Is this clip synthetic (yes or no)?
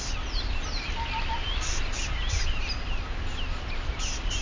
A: no